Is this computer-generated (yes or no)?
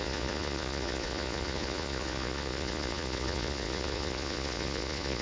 yes